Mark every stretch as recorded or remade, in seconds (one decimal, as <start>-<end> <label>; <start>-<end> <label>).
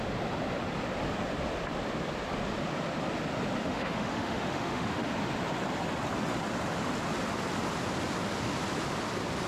0.0-3.6 recorded; 3.6-5.1 remade; 5.1-9.5 recorded